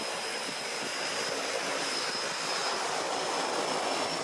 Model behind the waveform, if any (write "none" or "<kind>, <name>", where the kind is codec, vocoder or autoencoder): none